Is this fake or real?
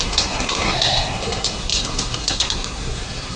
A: fake